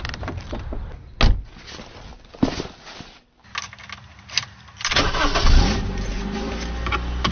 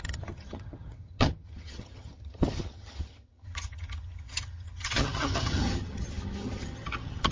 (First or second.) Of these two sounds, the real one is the first